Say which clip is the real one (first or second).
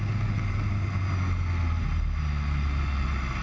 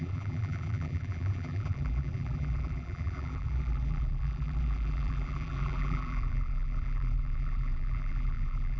first